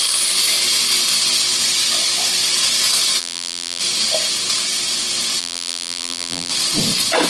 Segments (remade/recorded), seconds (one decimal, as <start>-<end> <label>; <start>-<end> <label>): 0.0-3.2 recorded; 3.2-3.8 remade; 3.8-5.4 recorded; 5.4-6.5 remade; 6.5-7.3 recorded